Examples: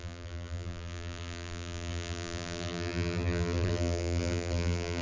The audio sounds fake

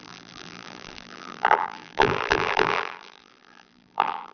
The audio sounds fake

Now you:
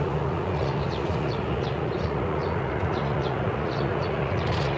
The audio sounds fake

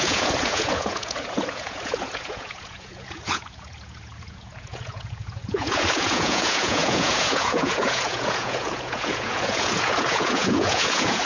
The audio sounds fake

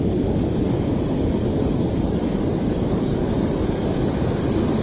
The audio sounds fake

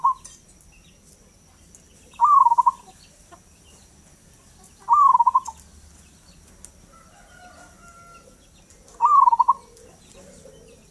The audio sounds real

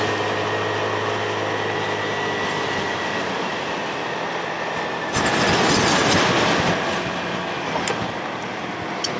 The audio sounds real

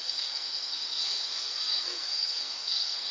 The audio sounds fake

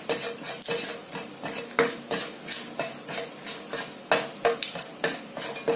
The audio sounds real